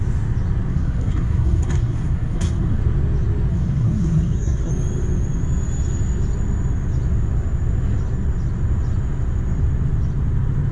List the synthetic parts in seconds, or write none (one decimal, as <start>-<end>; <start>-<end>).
0.7-2.8; 3.5-4.7

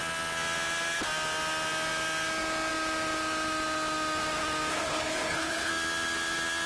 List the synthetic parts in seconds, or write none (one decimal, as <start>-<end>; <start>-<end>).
4.7-5.7

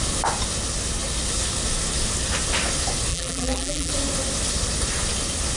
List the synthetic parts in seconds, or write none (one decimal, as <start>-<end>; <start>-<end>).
3.1-3.9

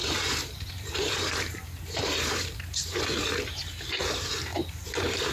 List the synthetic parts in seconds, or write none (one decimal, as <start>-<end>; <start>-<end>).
0.0-3.2; 4.5-5.3